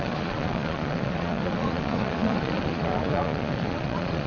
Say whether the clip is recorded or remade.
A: remade